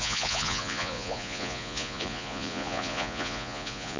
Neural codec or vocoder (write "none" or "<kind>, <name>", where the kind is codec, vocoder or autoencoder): vocoder, Vocos